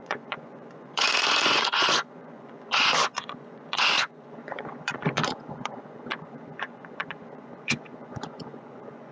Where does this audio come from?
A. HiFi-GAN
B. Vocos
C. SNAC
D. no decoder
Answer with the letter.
B